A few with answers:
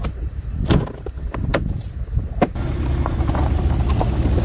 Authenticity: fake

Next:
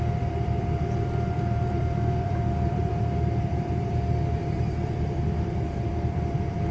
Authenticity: fake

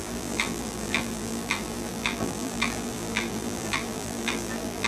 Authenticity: fake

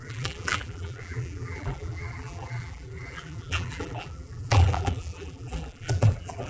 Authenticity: fake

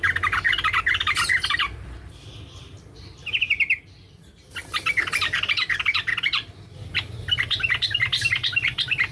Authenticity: fake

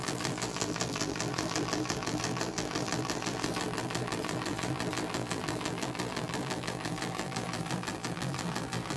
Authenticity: fake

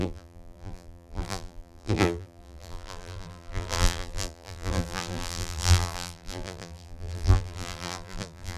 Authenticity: fake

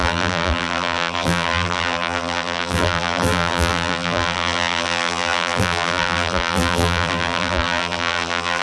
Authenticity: fake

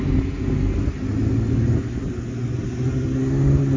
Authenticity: real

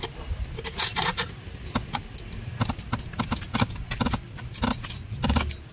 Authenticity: real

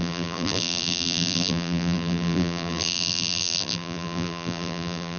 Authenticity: fake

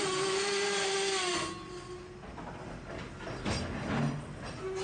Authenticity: real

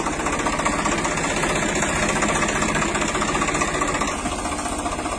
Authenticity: real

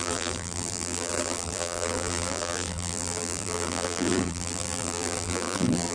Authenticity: fake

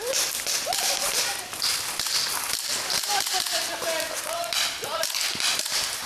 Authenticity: real